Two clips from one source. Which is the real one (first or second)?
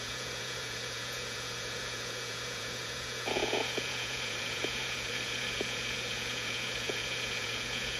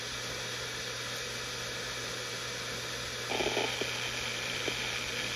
second